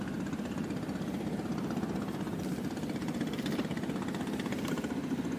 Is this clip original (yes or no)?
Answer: no